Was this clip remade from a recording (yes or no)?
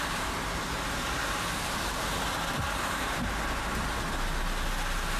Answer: no